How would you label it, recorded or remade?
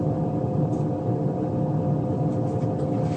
recorded